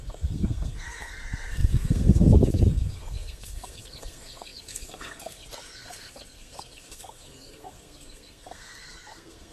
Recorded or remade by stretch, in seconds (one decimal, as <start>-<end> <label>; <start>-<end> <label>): 0.0-9.5 remade